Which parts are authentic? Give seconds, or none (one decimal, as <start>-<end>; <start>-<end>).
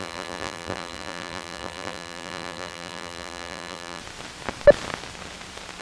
4.0-5.8